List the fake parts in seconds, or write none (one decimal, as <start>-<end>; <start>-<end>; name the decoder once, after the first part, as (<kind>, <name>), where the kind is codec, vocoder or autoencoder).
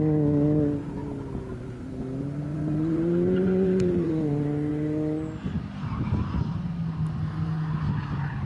2.5-4.1 (vocoder, BigVGAN v2)